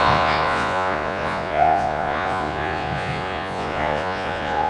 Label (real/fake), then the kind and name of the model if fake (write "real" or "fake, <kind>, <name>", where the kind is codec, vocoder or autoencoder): fake, vocoder, Vocos